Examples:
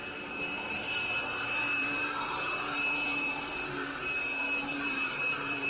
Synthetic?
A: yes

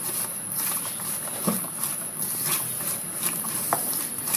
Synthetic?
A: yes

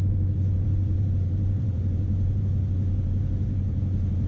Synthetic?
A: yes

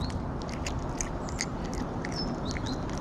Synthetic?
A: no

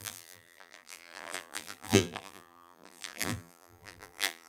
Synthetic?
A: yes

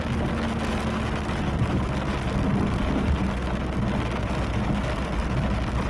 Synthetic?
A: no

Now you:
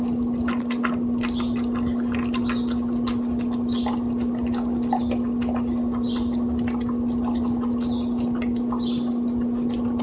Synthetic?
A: no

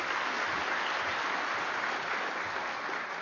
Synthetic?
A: no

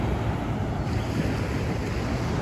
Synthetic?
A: no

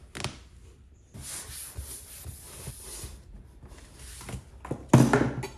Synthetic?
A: no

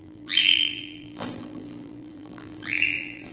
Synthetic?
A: yes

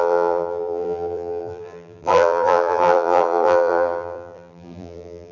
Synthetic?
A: yes